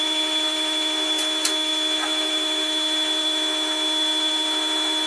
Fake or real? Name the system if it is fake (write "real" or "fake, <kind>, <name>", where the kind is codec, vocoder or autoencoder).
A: fake, autoencoder, DAC-VAE